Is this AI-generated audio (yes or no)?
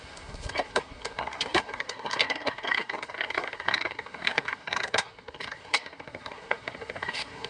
yes